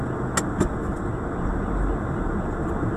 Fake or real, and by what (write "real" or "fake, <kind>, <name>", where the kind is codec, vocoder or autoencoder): real